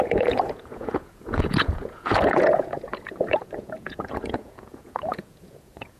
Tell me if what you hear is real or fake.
fake